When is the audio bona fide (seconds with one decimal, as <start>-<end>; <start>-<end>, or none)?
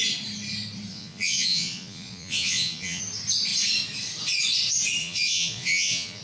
0.0-0.9; 3.0-5.0